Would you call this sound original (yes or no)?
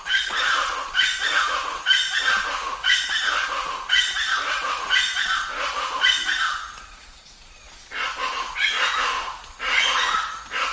no